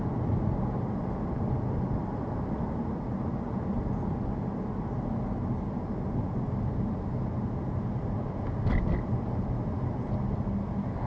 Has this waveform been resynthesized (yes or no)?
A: no